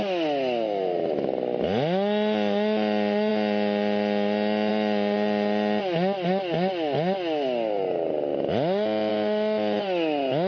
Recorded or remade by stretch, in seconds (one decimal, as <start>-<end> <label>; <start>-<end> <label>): 0.0-10.5 recorded